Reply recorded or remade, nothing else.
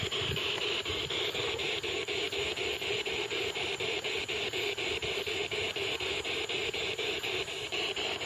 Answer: remade